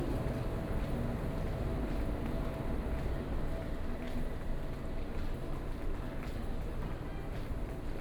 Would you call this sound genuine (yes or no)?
yes